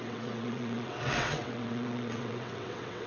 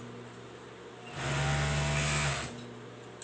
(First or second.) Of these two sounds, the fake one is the first